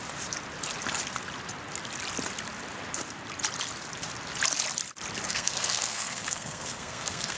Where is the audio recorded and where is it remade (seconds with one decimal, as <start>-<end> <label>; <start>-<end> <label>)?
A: 0.0-5.3 recorded; 5.3-7.4 remade